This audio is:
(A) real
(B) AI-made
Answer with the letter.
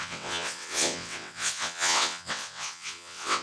B